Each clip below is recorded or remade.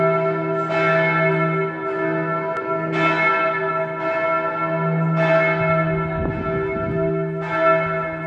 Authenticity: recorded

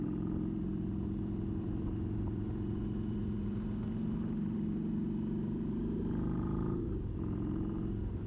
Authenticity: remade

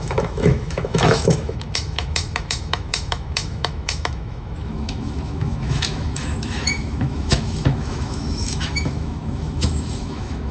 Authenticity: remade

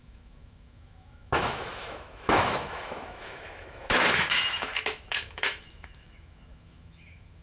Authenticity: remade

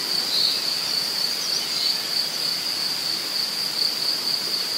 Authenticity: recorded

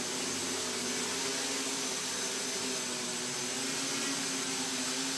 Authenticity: recorded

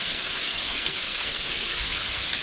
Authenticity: remade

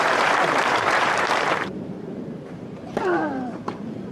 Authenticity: remade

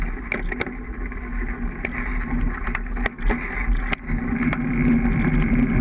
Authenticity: recorded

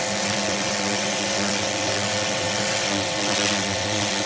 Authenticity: remade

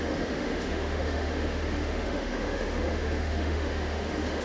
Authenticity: remade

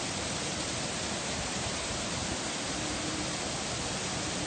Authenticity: recorded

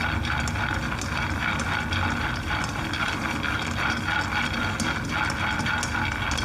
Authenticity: recorded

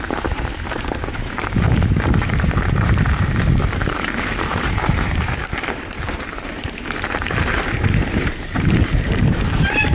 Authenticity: remade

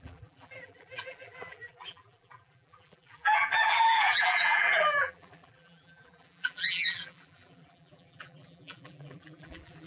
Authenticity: remade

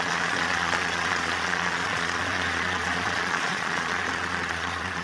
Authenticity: remade